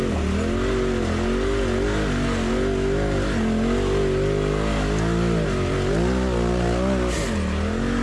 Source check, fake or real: real